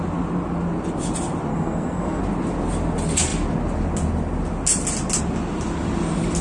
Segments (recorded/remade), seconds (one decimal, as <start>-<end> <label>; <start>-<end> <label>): 0.0-1.5 recorded; 1.5-2.2 remade; 2.2-6.4 recorded